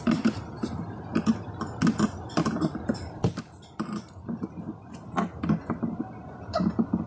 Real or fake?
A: real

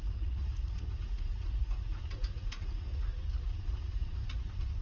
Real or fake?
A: fake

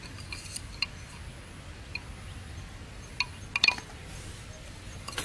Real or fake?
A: real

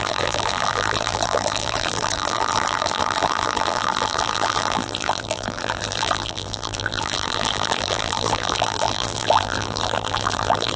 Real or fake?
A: fake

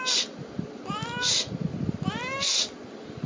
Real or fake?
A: real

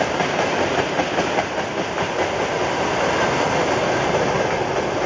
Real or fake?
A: real